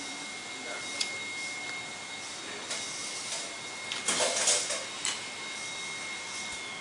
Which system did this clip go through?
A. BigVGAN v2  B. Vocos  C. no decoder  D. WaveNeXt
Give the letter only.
C